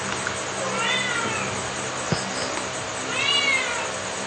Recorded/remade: recorded